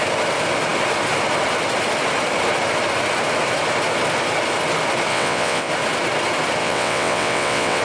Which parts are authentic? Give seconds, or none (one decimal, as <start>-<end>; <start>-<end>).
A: 0.0-5.1; 5.7-6.6